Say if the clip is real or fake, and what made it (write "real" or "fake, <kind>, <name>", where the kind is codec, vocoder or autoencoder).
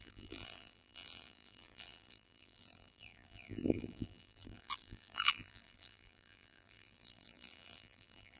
fake, vocoder, BigVGAN v2